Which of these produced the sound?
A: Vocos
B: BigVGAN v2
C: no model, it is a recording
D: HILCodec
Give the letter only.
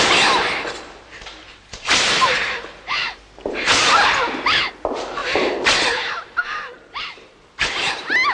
B